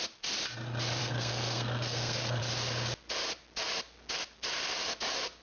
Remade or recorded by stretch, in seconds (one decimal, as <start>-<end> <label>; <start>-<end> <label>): 0.0-1.0 recorded; 1.0-2.4 remade; 2.4-5.4 recorded